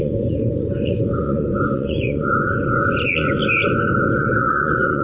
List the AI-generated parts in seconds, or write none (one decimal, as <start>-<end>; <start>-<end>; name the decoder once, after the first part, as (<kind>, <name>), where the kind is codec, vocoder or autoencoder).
0.0-3.4 (vocoder, Vocos); 4.1-5.0

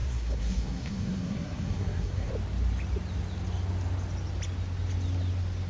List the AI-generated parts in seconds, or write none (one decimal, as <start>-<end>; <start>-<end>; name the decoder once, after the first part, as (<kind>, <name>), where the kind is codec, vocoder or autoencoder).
0.0-2.3 (codec, SNAC)

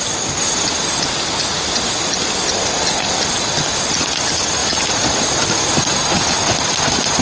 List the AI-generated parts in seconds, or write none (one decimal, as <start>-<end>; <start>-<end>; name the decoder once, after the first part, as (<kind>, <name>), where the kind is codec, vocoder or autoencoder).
none

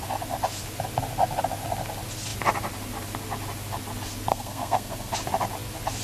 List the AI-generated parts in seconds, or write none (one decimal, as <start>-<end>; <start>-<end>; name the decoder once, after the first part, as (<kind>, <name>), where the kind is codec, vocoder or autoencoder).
4.3-5.1 (codec, SNAC)

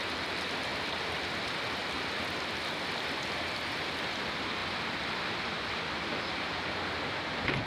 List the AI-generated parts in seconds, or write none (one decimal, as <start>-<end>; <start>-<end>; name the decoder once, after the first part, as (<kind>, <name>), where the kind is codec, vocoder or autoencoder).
none

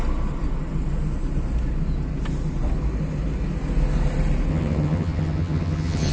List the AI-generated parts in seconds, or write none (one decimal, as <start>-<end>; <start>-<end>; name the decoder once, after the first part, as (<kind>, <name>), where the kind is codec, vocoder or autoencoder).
4.5-6.1 (vocoder, HiFi-GAN)

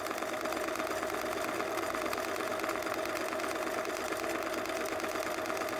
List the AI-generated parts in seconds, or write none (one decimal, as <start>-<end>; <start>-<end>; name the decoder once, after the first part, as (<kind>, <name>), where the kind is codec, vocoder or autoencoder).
none

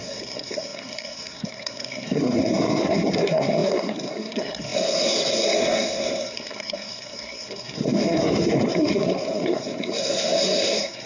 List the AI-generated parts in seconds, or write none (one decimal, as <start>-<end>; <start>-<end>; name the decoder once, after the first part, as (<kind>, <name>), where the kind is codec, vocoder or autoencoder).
0.0-11.1 (codec, SNAC)